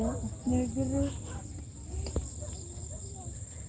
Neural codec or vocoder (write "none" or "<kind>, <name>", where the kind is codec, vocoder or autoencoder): none